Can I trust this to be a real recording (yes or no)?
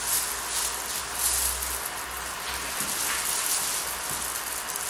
yes